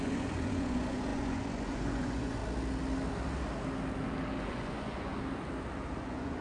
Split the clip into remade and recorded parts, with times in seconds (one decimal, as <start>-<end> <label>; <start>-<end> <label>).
0.0-2.4 remade; 2.4-4.4 recorded; 4.4-5.1 remade; 5.1-6.0 recorded; 6.0-6.4 remade